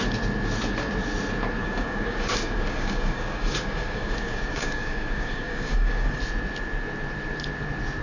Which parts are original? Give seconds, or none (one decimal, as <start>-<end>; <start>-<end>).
0.0-1.6; 6.2-8.0

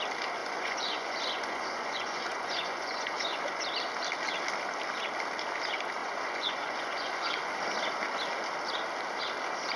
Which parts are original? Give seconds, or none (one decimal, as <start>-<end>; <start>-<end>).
0.0-0.4; 3.6-6.0; 7.5-9.8